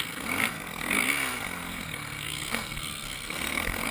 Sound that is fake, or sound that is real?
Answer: fake